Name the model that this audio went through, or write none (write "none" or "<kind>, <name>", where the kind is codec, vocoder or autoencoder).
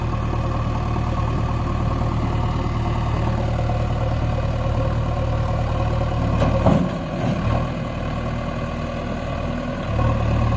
none